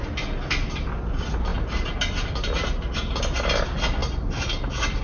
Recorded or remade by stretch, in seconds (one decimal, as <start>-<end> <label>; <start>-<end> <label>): 0.0-5.0 recorded